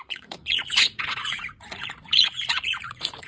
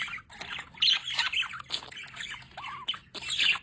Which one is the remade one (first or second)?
first